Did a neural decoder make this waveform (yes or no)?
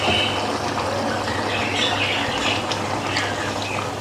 no